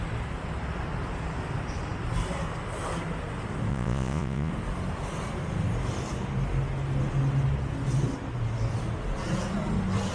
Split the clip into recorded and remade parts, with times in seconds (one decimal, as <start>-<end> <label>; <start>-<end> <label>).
0.0-3.7 recorded; 3.7-4.5 remade; 4.5-10.1 recorded

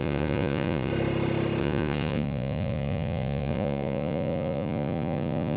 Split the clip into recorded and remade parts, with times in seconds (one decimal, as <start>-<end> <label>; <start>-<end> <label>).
0.0-0.9 remade; 0.9-1.6 recorded; 1.6-5.6 remade

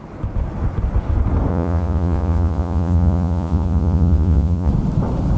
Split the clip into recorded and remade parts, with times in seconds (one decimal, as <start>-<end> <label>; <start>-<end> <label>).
0.0-1.5 recorded; 1.5-4.7 remade; 4.7-5.4 recorded

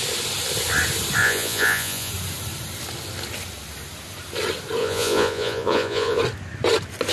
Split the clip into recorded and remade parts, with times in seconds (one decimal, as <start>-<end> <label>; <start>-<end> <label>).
0.0-1.2 recorded; 1.2-2.1 remade; 2.1-4.8 recorded; 4.8-6.2 remade; 6.2-7.1 recorded